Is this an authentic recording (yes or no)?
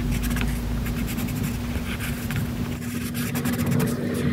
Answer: yes